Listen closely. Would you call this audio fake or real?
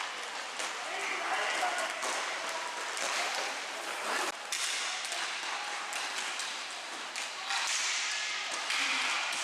real